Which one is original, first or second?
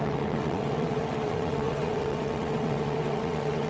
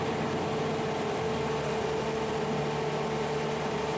second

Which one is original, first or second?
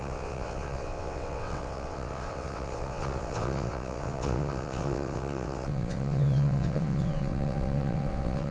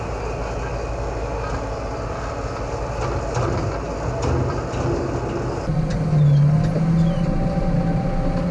second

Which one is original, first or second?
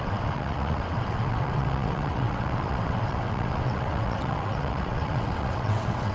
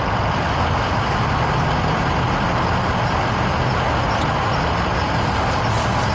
second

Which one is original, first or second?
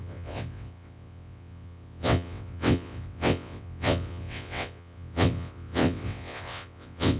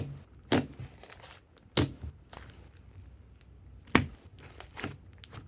second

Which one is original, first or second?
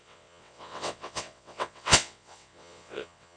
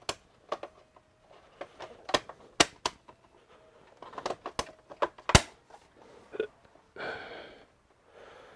second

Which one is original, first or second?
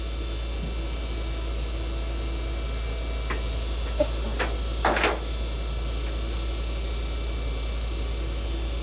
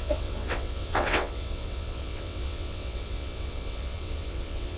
first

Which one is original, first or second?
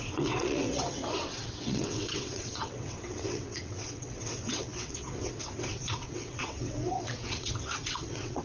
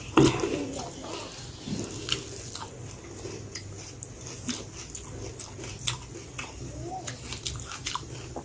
second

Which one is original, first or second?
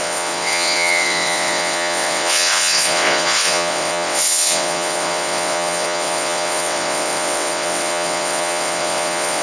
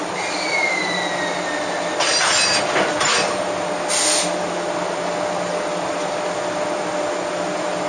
second